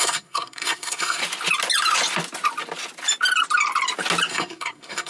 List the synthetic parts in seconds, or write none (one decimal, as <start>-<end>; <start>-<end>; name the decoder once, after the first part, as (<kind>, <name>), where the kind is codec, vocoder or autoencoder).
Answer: 0.0-1.2 (codec, SNAC); 4.3-5.1